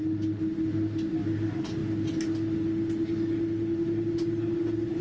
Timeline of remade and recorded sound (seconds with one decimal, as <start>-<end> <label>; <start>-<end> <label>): 0.0-5.0 recorded